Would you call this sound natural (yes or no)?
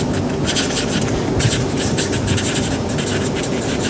yes